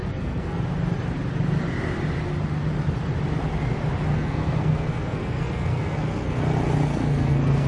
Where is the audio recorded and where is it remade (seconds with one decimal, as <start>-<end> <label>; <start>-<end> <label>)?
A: 0.0-0.6 remade; 0.6-4.1 recorded; 4.1-6.4 remade; 6.4-6.9 recorded; 6.9-7.7 remade